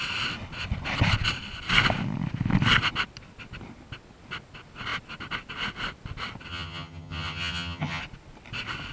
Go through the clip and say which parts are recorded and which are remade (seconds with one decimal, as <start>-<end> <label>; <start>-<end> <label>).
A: 0.0-6.5 recorded; 6.5-8.0 remade; 8.0-8.9 recorded